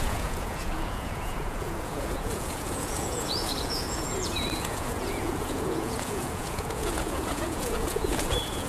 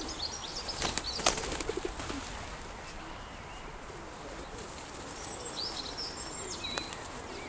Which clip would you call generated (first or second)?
first